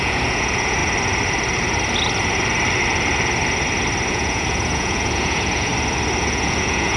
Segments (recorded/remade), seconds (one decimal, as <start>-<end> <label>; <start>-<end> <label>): 0.0-0.8 remade; 0.8-4.1 recorded; 4.1-5.7 remade; 5.7-6.2 recorded; 6.2-7.0 remade